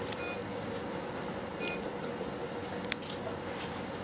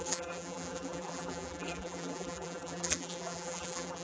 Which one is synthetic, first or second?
second